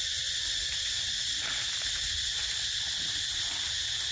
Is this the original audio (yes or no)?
yes